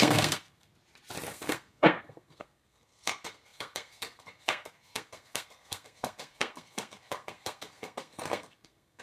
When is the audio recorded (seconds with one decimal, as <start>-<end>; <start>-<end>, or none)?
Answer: 0.7-1.3